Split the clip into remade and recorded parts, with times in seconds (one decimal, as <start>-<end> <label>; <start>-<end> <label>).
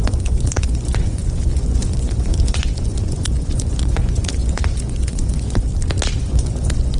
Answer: 0.0-5.7 remade; 5.7-6.2 recorded; 6.2-7.0 remade